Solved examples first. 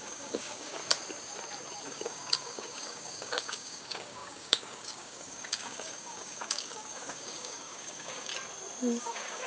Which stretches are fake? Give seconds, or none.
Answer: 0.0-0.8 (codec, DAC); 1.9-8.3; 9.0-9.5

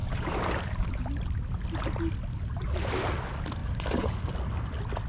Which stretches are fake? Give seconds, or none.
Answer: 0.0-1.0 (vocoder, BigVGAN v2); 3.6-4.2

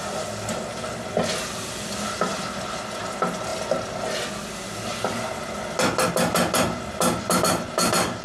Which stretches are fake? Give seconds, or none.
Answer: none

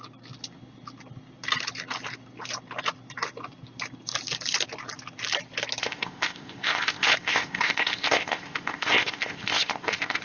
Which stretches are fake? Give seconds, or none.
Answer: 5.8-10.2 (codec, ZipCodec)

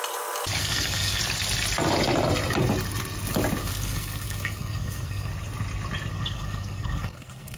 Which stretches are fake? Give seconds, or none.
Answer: 0.6-1.2 (codec, SNAC); 3.6-5.3; 6.1-7.6

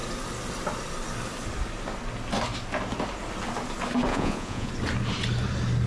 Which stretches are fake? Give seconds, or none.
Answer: 4.1-4.7 (vocoder, Vocos)

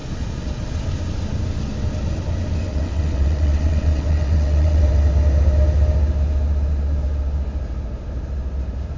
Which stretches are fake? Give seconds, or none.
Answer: 2.7-4.8 (vocoder, WaveNeXt)